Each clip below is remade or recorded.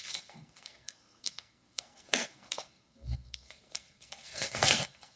remade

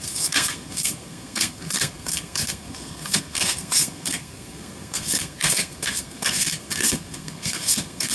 remade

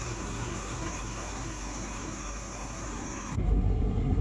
remade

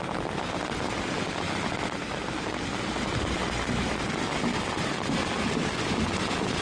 recorded